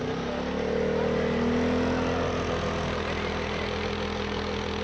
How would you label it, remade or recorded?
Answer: recorded